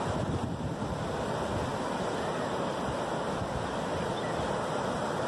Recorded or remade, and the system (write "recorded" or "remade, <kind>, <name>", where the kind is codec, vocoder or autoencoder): recorded